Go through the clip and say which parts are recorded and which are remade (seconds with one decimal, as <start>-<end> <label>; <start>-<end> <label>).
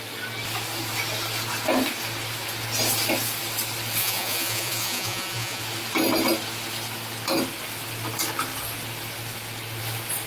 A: 0.0-4.0 recorded; 4.0-5.6 remade; 5.6-10.3 recorded